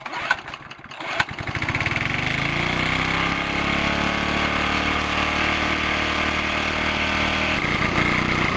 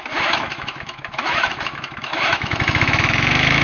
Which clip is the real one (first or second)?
first